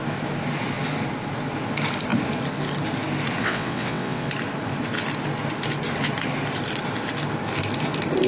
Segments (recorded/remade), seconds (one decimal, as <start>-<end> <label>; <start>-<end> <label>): 0.0-3.4 recorded; 3.4-4.3 remade; 4.3-8.3 recorded